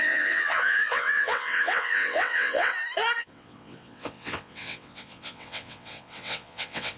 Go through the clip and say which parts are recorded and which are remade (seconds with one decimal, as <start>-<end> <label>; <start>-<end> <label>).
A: 0.0-2.7 remade; 2.7-3.2 recorded; 3.2-7.0 remade